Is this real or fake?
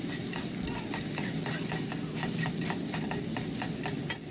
fake